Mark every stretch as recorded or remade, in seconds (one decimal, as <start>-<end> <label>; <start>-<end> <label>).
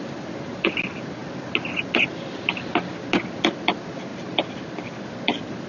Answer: 0.0-5.7 recorded